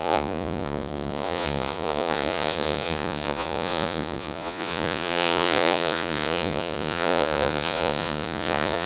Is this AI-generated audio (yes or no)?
yes